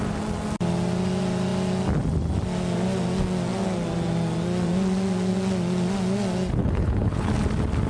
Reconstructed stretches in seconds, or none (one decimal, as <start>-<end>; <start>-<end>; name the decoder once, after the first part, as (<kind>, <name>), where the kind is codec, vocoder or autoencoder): 6.6-7.3 (codec, HILCodec)